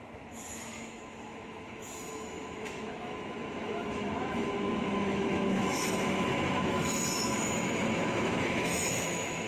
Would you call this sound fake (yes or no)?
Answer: yes